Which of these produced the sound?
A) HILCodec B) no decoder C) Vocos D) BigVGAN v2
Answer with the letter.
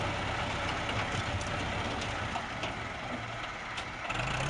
B